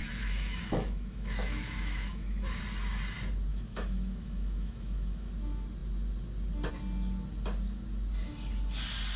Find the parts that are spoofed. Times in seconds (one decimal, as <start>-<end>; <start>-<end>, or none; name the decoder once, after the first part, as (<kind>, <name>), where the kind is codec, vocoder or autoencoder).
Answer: 0.0-2.6 (autoencoder, DAC-VAE); 3.5-5.3